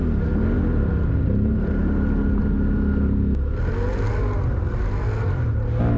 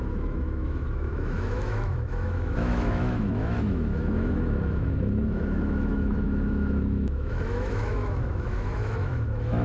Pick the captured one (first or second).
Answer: first